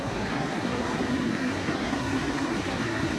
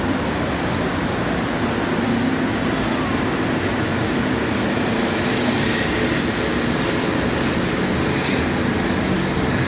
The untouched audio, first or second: second